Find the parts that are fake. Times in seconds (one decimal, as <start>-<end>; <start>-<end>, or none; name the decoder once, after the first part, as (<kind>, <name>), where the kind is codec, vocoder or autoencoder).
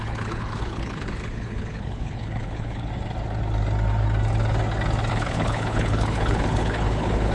0.0-2.9 (codec, HILCodec); 5.1-7.3